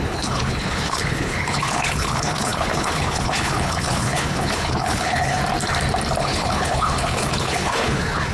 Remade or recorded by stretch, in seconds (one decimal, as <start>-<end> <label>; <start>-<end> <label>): 0.0-5.4 remade; 5.4-6.2 recorded; 6.2-8.3 remade

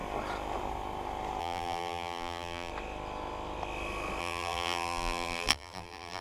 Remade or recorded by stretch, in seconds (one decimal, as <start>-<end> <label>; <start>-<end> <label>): 0.0-1.4 recorded; 1.4-2.7 remade; 2.7-4.2 recorded; 4.2-6.2 remade

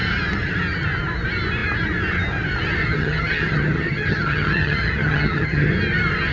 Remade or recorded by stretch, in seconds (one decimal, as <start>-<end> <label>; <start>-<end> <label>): 0.0-2.8 recorded; 2.8-5.7 remade; 5.7-6.3 recorded

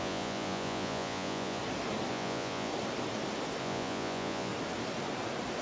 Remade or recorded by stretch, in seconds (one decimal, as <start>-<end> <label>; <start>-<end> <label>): 0.0-1.6 remade; 1.6-2.1 recorded; 2.1-2.7 remade; 2.7-3.6 recorded; 3.6-4.5 remade; 4.5-5.6 recorded